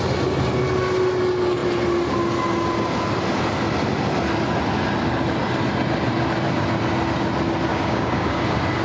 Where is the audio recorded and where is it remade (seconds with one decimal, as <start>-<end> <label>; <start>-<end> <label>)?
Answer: 0.0-7.7 recorded; 7.7-8.4 remade; 8.4-8.8 recorded